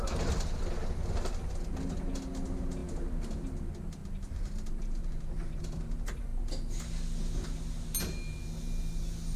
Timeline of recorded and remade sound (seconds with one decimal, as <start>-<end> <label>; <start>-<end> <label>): 0.0-4.0 recorded; 4.0-5.6 remade; 5.6-9.4 recorded